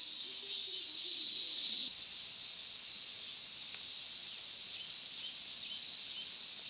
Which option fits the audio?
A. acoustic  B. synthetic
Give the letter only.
A